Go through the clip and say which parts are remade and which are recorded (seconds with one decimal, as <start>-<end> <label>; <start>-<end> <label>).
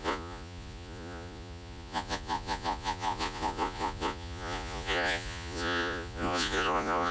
0.0-7.1 remade